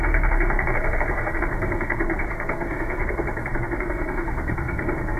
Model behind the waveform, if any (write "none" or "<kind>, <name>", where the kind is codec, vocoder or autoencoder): codec, SNAC